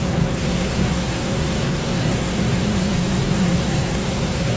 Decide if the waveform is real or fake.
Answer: fake